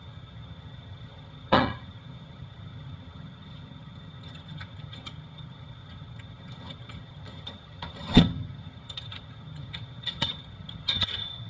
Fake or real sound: fake